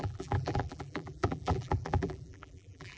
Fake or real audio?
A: fake